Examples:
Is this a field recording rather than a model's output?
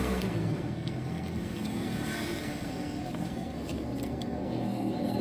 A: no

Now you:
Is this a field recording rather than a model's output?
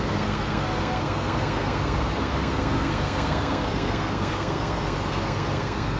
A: no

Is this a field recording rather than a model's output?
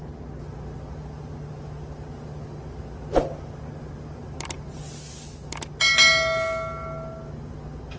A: yes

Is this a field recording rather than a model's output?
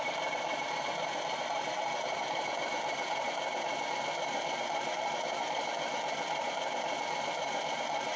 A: yes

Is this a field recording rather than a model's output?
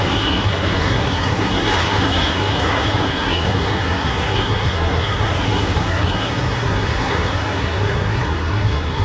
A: no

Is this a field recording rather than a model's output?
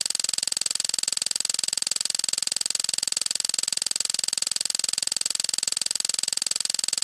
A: yes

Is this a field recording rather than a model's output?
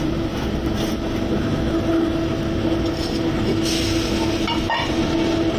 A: yes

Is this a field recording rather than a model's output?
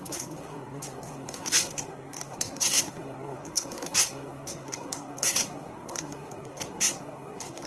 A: no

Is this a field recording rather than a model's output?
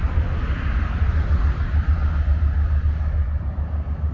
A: yes